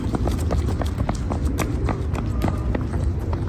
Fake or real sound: real